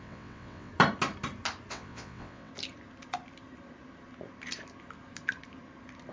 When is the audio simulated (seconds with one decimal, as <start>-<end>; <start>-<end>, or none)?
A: 0.0-0.7; 1.7-2.5